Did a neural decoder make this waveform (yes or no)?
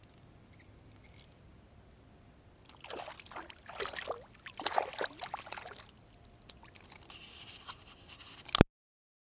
no